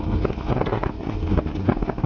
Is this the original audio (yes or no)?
no